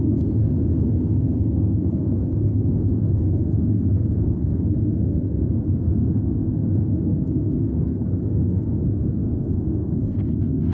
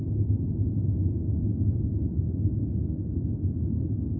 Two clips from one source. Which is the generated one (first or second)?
first